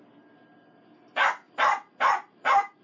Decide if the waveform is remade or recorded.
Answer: recorded